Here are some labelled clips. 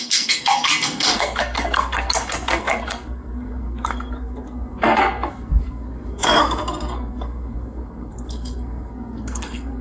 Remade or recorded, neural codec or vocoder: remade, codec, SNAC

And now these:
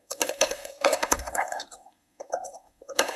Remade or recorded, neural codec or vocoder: remade, codec, SNAC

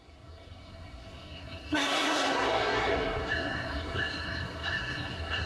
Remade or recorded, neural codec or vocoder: remade, codec, SNAC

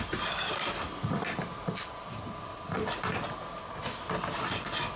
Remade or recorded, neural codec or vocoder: recorded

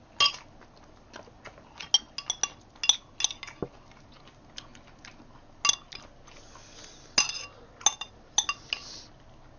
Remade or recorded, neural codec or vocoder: recorded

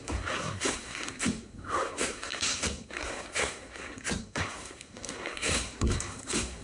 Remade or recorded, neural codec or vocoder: remade, codec, SNAC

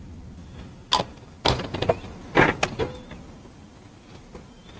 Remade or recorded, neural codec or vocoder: recorded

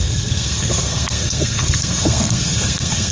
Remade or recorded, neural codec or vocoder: remade, codec, SNAC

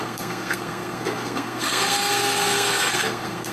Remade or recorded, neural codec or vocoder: remade, codec, SNAC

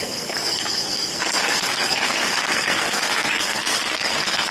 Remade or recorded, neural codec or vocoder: remade, codec, SNAC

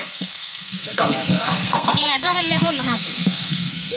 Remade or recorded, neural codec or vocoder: remade, codec, SNAC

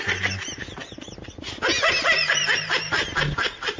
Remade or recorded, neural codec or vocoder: recorded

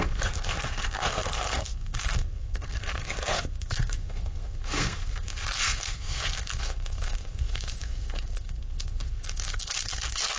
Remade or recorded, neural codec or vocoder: remade, codec, SNAC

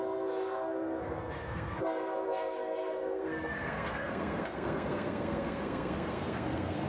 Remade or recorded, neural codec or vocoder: remade, codec, SNAC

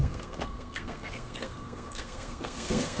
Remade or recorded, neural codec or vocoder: remade, codec, SNAC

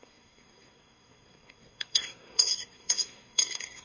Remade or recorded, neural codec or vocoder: remade, codec, SNAC